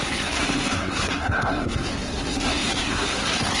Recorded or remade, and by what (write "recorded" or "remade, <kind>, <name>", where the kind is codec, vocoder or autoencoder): remade, codec, SNAC